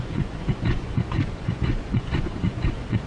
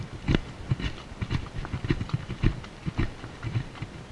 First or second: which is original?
second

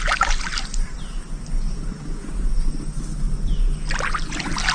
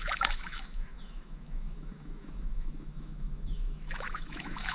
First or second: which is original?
first